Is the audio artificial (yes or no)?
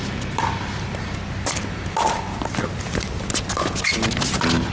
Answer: no